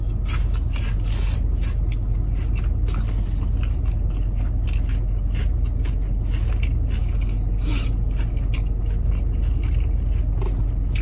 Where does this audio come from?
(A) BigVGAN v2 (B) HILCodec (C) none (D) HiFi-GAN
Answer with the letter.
C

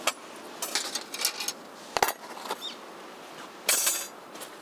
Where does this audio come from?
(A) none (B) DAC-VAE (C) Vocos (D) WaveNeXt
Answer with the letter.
A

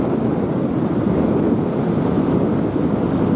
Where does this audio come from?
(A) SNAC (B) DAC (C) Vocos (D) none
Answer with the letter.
D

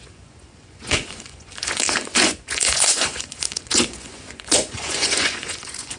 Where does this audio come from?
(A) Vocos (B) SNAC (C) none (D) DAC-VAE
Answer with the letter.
A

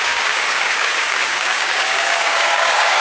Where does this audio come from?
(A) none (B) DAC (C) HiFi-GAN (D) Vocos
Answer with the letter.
B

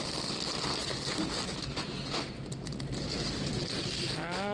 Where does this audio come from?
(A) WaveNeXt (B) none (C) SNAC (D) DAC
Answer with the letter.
B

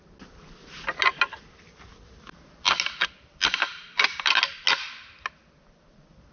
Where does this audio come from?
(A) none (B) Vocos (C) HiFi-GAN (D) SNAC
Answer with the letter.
A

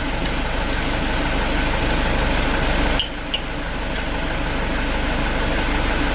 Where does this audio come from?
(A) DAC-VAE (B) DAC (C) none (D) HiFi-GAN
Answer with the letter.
C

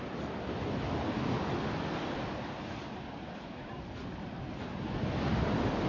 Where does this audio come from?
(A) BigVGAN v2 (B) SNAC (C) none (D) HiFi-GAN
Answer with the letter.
C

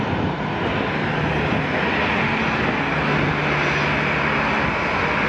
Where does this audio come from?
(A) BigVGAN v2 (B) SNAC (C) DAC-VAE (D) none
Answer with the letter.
D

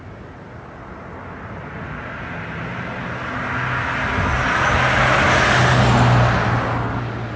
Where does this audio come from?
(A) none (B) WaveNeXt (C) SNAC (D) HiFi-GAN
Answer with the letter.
A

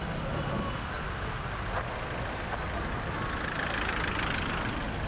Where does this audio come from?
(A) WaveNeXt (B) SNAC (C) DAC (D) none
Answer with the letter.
D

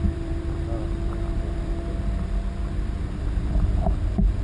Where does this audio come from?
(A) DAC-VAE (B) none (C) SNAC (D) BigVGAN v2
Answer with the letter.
D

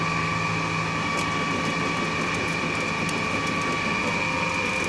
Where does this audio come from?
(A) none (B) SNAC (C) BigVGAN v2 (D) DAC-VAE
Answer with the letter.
A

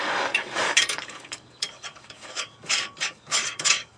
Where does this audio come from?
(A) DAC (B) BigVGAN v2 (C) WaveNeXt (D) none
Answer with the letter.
A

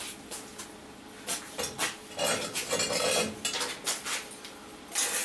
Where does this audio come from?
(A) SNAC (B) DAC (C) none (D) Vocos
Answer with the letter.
C